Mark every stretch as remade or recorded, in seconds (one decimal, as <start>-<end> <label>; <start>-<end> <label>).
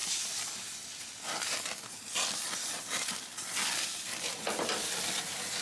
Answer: 0.0-5.6 recorded